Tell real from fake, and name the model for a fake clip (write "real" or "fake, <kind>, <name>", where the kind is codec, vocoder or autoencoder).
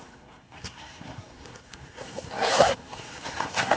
fake, codec, SNAC